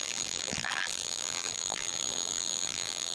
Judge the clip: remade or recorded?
remade